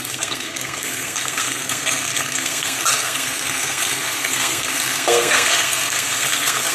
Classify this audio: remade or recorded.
remade